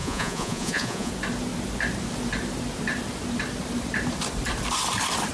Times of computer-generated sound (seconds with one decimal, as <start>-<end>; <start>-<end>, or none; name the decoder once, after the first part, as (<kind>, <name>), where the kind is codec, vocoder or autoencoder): 0.0-1.1 (vocoder, Vocos)